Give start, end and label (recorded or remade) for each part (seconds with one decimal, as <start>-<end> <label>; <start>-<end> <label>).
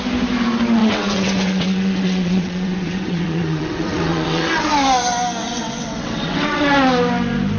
0.0-0.8 recorded; 0.8-4.7 remade; 4.7-5.4 recorded; 5.4-6.7 remade; 6.7-7.6 recorded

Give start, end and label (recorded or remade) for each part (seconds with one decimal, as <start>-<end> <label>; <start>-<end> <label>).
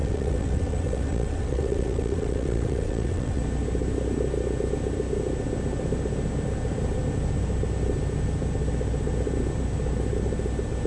0.0-3.4 remade; 3.4-10.9 recorded